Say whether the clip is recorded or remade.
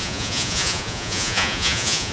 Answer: remade